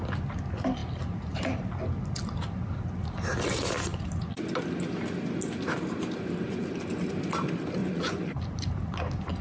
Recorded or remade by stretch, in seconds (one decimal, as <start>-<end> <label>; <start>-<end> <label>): 0.0-7.8 recorded; 7.8-8.4 remade; 8.4-9.4 recorded